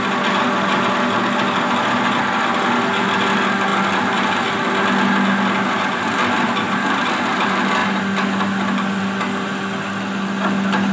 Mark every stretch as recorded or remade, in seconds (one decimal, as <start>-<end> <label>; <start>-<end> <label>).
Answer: 0.0-10.9 recorded